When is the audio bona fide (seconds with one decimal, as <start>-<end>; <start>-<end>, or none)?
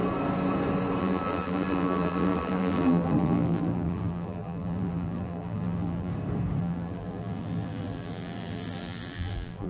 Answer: 0.0-1.0; 6.1-6.6